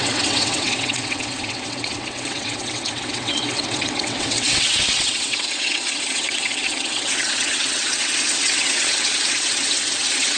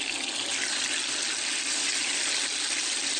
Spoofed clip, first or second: first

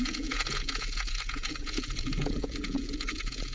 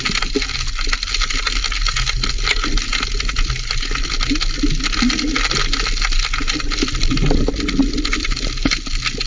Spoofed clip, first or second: first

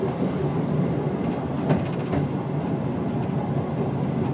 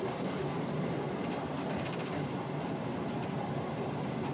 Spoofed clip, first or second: second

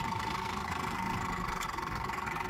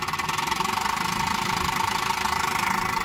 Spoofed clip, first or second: first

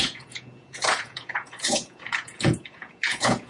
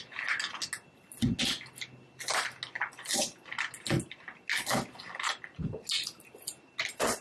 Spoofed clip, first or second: first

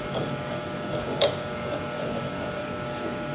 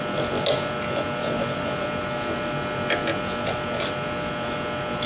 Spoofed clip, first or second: first